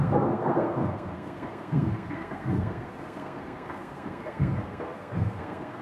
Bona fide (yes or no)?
no